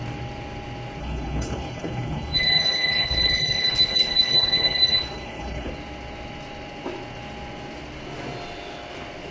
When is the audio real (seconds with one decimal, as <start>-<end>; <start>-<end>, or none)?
0.0-1.0; 5.7-9.3